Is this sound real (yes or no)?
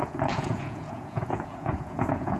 no